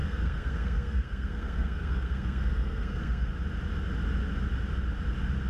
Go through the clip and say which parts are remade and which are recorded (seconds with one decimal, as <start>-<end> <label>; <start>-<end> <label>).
0.0-3.3 remade; 3.3-5.5 recorded